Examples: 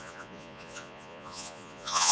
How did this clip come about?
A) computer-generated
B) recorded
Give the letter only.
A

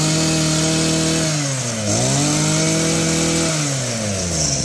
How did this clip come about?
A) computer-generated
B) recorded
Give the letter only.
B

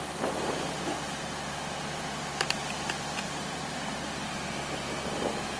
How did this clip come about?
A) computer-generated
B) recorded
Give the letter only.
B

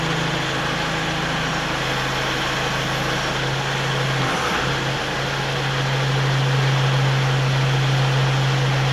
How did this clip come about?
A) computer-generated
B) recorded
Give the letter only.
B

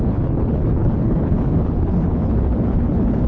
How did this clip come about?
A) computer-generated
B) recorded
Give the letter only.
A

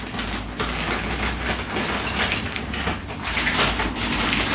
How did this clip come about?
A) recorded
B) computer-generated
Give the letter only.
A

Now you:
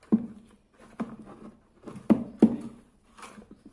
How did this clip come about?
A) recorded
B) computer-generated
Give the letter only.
A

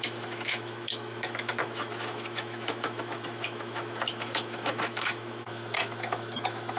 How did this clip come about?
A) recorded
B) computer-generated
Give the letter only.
B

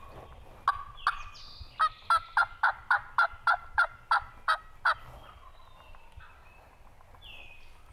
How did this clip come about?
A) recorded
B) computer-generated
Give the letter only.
A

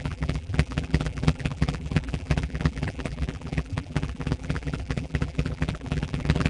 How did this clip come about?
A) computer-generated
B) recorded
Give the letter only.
A